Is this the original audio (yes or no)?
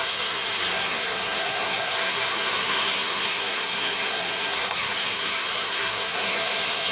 no